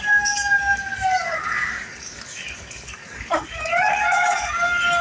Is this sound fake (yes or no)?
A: yes